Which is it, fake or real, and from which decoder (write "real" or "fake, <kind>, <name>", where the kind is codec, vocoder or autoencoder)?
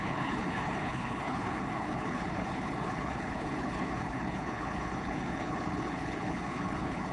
fake, codec, HILCodec